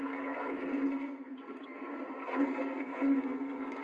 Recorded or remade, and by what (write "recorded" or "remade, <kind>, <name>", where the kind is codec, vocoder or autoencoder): remade, codec, SNAC